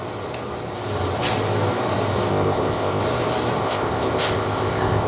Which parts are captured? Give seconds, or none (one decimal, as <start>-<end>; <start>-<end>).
0.0-2.3; 3.0-3.6